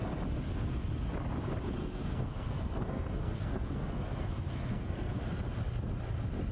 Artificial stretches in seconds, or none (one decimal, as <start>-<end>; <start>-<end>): 1.8-5.2